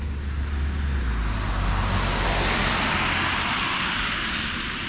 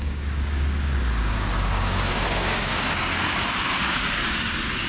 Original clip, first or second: first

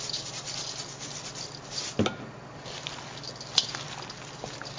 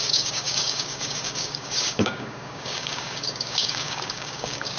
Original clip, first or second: first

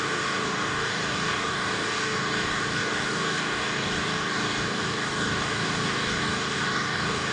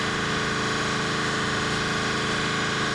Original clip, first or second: second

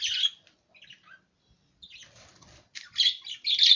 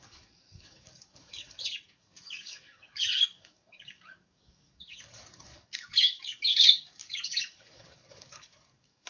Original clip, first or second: first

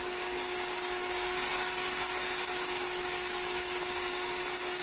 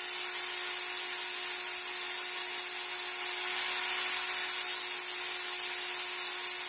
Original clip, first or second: second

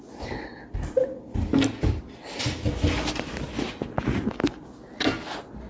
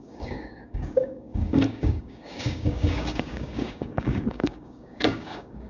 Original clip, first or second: first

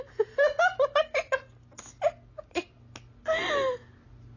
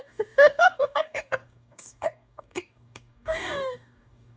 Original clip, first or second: first